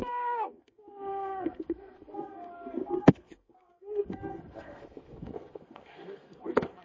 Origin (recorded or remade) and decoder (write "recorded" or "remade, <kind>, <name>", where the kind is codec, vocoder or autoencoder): remade, codec, SNAC